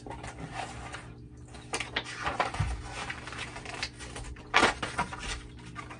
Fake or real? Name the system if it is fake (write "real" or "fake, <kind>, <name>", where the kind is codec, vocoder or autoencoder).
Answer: real